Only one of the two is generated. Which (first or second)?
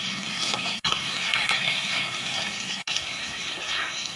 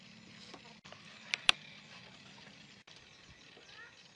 first